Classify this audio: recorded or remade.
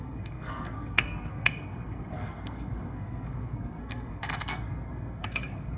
remade